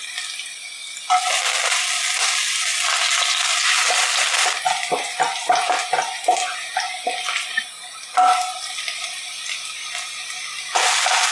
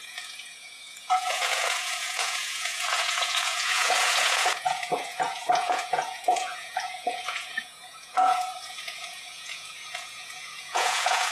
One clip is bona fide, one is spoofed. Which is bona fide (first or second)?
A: first